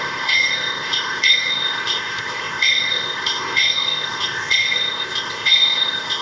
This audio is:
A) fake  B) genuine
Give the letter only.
A